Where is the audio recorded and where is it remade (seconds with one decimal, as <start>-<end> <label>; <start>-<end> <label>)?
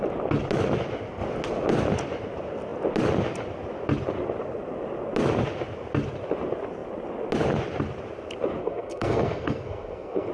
0.0-8.6 recorded; 8.6-10.3 remade